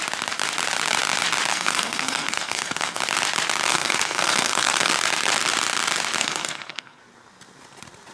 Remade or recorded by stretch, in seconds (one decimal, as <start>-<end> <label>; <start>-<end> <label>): 0.0-1.5 recorded; 1.5-3.0 remade; 3.0-3.7 recorded; 3.7-4.9 remade; 4.9-6.2 recorded; 6.2-7.0 remade; 7.0-8.1 recorded